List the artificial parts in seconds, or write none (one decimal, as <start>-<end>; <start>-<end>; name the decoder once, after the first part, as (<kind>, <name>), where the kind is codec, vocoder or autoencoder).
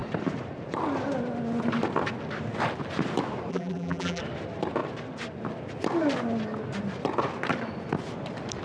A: 3.5-4.2 (vocoder, BigVGAN v2)